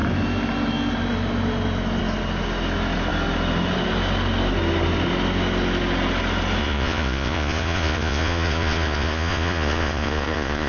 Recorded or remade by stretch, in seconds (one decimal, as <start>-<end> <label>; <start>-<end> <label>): 0.0-6.6 recorded; 6.6-10.7 remade